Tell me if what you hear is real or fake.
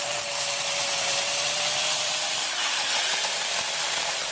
fake